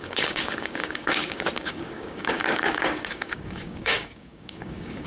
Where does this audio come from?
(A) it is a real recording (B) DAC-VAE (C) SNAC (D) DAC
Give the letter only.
D